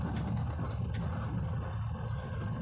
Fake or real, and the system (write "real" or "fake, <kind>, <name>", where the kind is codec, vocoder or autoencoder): real